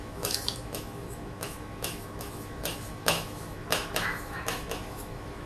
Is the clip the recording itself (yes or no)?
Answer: no